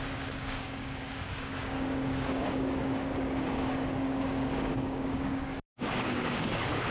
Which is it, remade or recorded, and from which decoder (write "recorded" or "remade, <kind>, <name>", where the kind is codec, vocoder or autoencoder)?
remade, codec, DAC